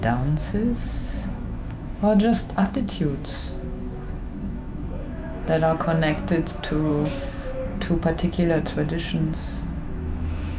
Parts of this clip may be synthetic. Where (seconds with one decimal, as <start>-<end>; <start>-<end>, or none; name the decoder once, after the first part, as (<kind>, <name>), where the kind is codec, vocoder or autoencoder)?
0.0-0.5 (autoencoder, DAC-VAE); 1.3-10.6